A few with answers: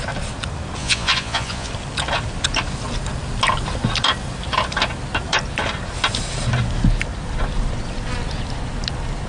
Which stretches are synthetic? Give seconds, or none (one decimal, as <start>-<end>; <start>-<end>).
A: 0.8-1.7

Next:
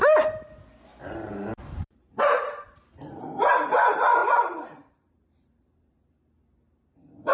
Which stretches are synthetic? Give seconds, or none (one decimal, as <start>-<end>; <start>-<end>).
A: 0.9-3.2; 4.2-5.9

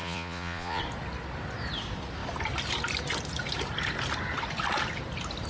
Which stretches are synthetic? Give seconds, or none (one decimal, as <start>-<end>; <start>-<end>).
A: 0.0-0.8

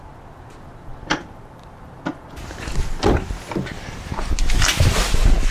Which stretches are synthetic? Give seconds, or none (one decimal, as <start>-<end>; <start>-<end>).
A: none

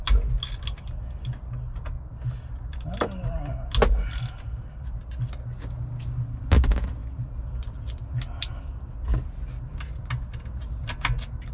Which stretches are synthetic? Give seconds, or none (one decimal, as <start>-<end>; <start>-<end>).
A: none

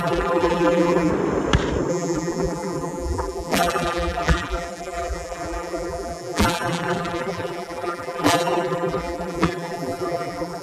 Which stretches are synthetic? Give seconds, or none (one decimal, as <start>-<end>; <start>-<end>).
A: 0.0-1.1; 1.9-10.6

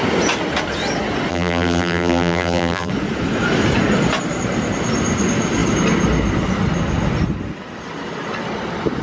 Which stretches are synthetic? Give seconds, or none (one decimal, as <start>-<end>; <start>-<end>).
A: 1.3-2.9

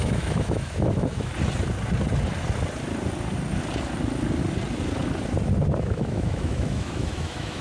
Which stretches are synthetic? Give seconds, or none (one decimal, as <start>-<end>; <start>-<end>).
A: 0.0-1.3; 5.8-7.6